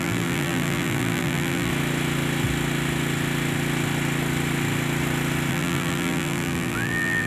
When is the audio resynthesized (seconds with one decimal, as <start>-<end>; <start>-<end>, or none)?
0.0-1.7; 5.5-7.3